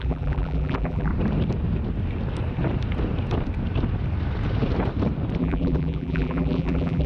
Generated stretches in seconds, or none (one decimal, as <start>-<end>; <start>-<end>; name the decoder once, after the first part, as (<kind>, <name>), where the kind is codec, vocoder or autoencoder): 0.0-1.1 (vocoder, BigVGAN v2); 5.4-7.1